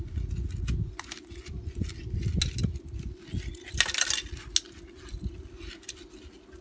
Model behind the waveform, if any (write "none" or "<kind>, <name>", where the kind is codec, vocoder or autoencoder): none